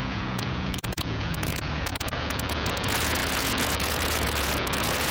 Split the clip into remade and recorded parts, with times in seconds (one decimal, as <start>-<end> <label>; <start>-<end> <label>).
0.0-5.1 remade